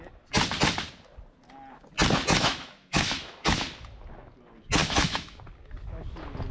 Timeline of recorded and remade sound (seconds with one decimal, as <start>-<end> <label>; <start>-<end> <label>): 0.0-2.3 recorded; 2.3-3.6 remade; 3.6-4.8 recorded; 4.8-5.4 remade; 5.4-6.5 recorded